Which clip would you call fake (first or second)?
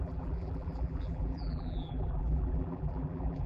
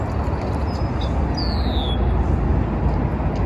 first